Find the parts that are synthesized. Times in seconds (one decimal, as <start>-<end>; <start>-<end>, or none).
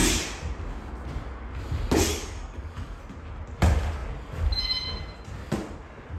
2.1-3.0